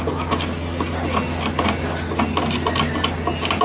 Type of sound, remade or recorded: recorded